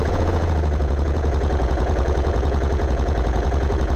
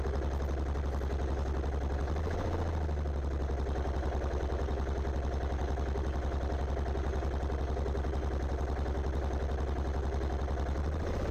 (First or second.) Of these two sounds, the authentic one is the second